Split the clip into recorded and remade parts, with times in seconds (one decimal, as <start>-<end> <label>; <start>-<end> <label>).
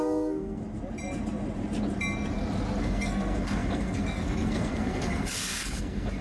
0.0-0.6 remade; 0.6-2.8 recorded; 2.8-6.2 remade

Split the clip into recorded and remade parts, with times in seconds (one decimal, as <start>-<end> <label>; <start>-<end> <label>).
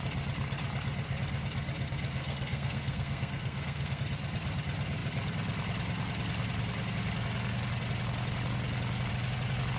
0.0-2.2 recorded; 2.2-4.0 remade; 4.0-9.8 recorded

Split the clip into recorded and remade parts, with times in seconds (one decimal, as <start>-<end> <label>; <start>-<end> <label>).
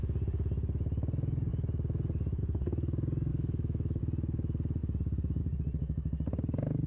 0.0-3.3 recorded; 3.3-4.0 remade; 4.0-6.9 recorded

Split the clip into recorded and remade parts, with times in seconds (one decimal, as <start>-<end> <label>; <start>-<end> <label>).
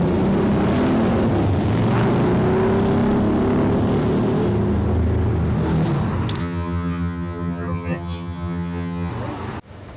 0.0-6.4 recorded; 6.4-9.1 remade; 9.1-10.0 recorded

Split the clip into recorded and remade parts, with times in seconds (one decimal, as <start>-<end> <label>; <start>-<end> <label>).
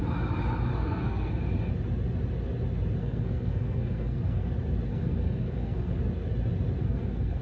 0.0-0.7 recorded; 0.7-1.3 remade; 1.3-3.0 recorded; 3.0-4.5 remade; 4.5-4.9 recorded; 4.9-6.0 remade; 6.0-6.8 recorded; 6.8-7.4 remade